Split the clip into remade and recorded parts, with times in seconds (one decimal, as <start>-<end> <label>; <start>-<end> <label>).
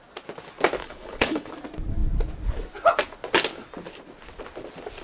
0.0-0.8 recorded; 0.8-1.5 remade; 1.5-5.0 recorded